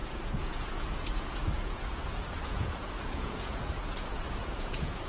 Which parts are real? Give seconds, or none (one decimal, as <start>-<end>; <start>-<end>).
none